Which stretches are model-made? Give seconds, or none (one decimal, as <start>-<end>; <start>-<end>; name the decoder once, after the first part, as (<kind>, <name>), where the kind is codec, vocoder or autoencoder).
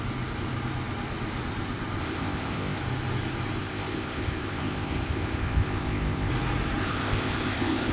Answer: 2.0-2.8 (codec, ZipCodec); 3.6-6.3; 6.8-7.9